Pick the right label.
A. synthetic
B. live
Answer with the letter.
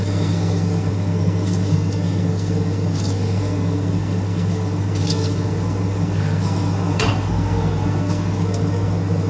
A